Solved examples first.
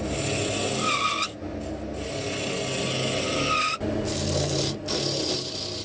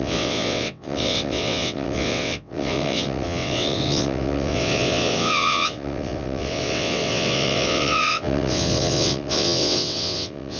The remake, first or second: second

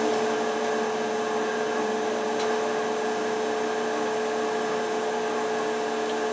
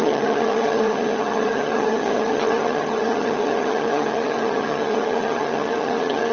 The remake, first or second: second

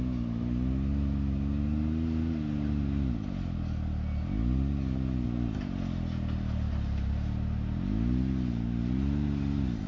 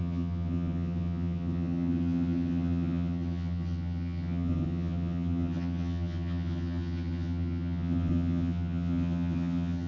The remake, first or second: second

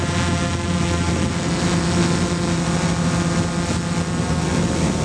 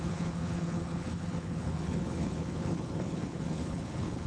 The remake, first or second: second